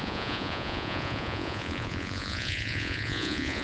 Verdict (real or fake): fake